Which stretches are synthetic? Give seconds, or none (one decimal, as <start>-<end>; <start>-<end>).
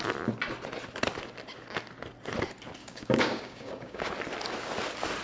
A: 2.8-4.1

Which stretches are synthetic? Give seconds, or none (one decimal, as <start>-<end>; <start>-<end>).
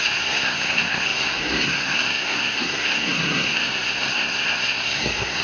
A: 0.0-5.4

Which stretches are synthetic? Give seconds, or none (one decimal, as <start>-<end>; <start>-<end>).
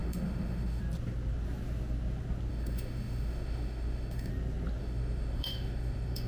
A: 0.0-0.8; 2.5-4.3; 4.8-6.3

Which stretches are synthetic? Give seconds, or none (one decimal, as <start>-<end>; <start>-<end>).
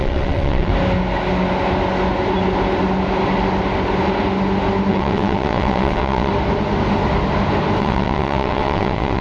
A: 0.0-0.7; 4.9-6.3; 7.8-9.2